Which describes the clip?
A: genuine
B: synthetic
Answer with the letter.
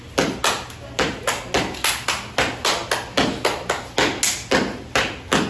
A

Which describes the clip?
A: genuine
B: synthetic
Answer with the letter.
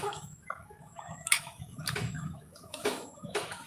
B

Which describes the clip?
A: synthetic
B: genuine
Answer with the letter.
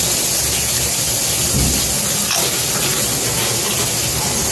B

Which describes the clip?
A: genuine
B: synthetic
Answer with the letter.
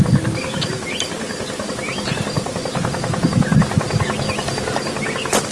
A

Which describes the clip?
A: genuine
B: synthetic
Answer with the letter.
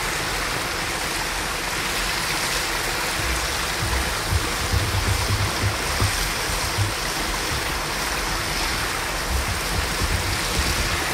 A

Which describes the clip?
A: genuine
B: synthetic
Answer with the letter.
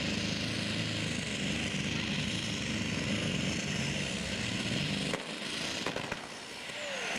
A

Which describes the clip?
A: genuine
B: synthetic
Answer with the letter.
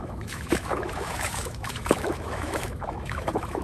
B